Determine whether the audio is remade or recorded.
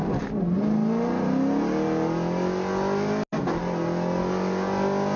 recorded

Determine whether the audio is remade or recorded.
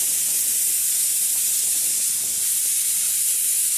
recorded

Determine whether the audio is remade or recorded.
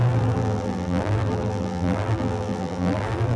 remade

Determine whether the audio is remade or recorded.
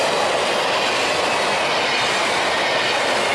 recorded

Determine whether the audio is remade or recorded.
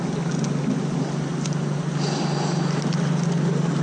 recorded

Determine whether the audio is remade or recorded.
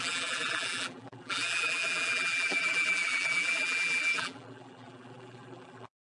remade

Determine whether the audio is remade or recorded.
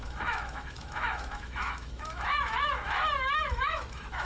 remade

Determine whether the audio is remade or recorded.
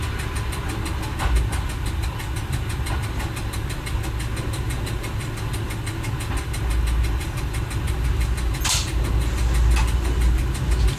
recorded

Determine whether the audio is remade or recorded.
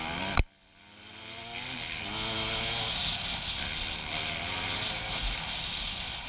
recorded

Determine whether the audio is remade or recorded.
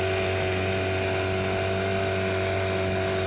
recorded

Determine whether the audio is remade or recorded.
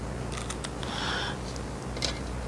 recorded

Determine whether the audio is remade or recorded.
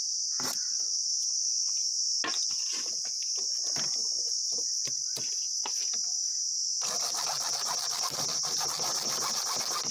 recorded